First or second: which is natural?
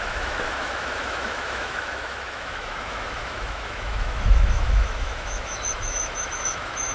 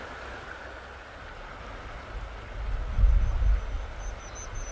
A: second